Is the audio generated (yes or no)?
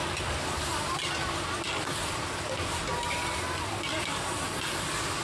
no